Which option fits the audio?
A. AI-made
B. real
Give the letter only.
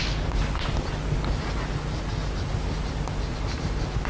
B